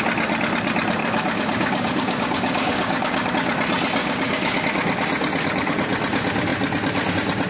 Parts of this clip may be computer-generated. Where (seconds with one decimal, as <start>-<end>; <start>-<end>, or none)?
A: 1.0-3.3; 4.0-4.6